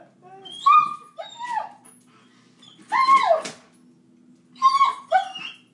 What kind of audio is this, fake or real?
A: real